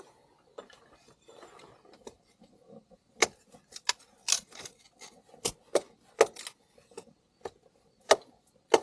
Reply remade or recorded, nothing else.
recorded